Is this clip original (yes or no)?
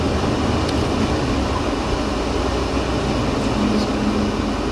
yes